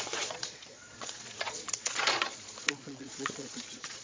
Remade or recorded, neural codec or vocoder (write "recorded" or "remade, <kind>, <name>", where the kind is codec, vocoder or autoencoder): remade, vocoder, Vocos